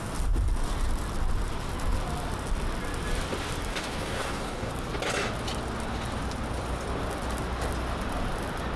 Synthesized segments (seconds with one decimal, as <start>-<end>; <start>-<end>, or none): 3.7-4.7